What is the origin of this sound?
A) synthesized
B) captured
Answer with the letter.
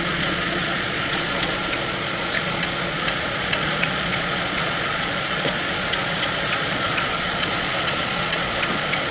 A